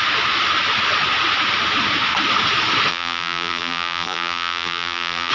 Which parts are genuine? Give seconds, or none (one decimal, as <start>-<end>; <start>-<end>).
0.0-2.9